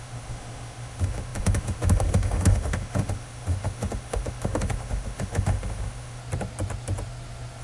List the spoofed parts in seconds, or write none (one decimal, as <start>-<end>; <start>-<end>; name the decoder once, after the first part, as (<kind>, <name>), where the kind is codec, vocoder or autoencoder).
0.0-6.2 (autoencoder, DAC-VAE)